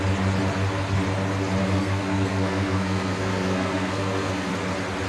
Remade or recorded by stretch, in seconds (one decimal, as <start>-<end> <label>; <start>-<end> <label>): 0.0-1.6 recorded; 1.6-4.5 remade; 4.5-5.1 recorded